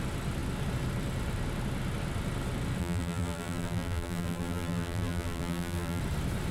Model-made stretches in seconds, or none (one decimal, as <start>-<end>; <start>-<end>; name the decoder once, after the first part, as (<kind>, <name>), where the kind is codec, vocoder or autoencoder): 2.8-6.0 (vocoder, BigVGAN v2)